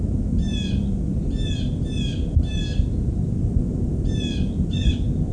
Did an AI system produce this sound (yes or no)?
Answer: no